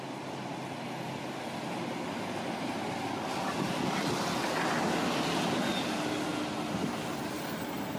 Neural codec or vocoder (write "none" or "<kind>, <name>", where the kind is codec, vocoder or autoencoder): none